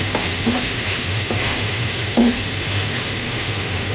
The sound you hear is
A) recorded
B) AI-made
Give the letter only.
B